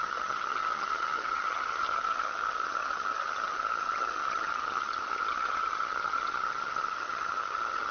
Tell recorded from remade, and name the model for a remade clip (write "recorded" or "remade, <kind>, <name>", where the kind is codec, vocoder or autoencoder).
remade, vocoder, HiFi-GAN